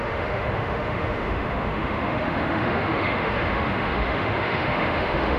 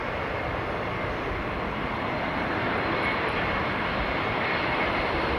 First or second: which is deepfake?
first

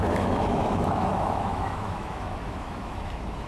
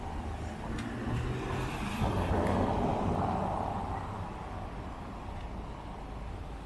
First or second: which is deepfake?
first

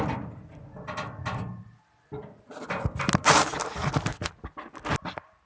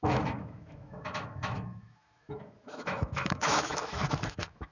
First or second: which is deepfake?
second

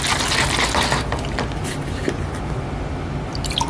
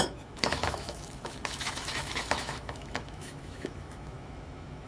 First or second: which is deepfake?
second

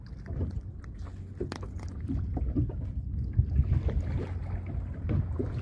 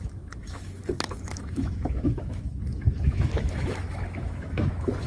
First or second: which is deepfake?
second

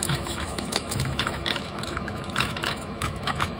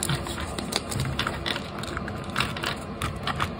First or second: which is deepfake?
first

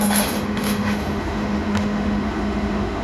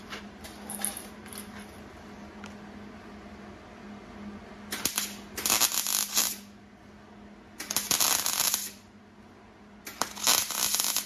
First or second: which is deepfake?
first